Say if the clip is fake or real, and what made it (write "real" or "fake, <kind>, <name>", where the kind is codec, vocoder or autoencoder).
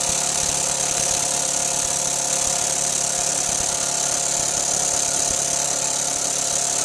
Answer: real